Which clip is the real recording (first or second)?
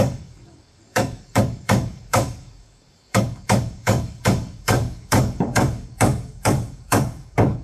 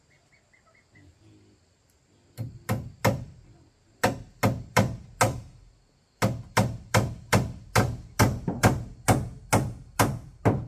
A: second